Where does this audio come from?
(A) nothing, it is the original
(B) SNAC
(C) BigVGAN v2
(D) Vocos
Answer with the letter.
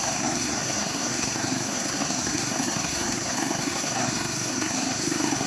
B